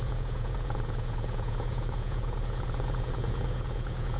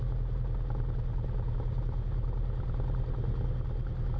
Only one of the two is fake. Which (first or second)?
first